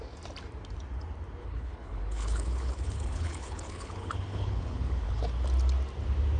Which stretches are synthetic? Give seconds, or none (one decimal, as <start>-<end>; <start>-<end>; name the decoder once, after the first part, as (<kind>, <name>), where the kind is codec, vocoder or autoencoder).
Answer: 1.4-5.2 (codec, HILCodec)